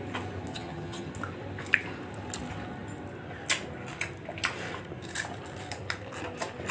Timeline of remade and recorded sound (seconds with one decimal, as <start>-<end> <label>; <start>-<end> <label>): 0.0-0.5 recorded; 0.5-1.1 remade; 1.1-6.7 recorded